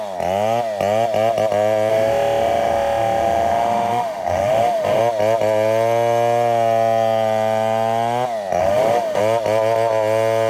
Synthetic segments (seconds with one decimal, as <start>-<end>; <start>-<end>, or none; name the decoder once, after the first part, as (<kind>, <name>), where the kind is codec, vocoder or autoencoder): 1.9-5.0 (autoencoder, DAC-VAE); 8.6-9.2